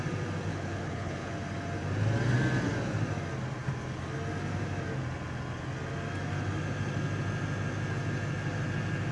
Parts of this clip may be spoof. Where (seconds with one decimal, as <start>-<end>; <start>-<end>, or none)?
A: 0.5-1.3